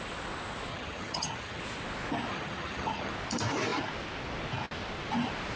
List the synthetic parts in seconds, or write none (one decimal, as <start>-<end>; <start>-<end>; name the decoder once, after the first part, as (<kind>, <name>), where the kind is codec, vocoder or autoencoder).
0.7-1.6 (vocoder, HiFi-GAN); 2.3-3.1